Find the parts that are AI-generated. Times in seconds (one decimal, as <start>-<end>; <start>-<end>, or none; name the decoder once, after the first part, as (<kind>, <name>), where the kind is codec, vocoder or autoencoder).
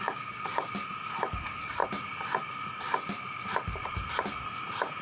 0.0-0.5 (codec, DAC); 1.4-1.8